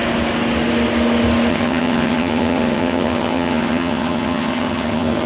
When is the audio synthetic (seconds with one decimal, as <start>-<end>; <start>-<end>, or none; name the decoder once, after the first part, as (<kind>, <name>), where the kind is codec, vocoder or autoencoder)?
1.5-5.3 (vocoder, HiFi-GAN)